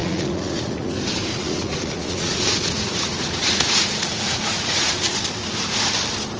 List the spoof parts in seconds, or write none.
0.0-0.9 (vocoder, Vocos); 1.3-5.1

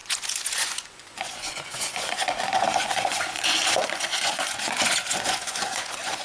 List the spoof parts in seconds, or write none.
0.0-6.2 (vocoder, Vocos)

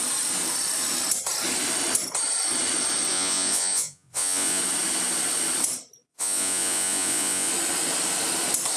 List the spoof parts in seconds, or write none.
3.1-4.6 (vocoder, Vocos); 6.1-7.5

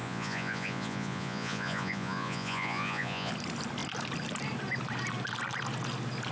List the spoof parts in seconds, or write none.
0.0-3.3 (vocoder, Vocos)

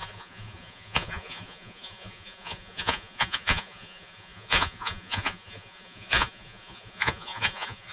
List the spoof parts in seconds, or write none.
0.0-7.9 (vocoder, Vocos)

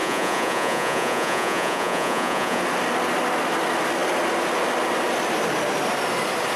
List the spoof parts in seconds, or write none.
0.0-2.6 (vocoder, Vocos)

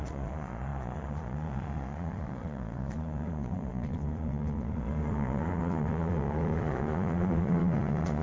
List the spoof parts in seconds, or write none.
0.0-8.2 (vocoder, Vocos)